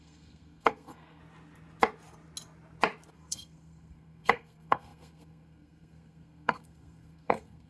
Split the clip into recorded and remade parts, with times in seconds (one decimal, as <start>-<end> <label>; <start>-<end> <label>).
0.0-1.2 remade; 1.2-3.1 recorded; 3.1-7.7 remade